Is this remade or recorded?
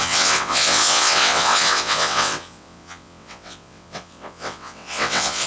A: remade